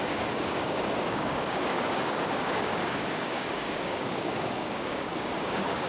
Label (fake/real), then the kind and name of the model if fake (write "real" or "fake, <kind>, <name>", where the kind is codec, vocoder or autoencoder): fake, codec, DAC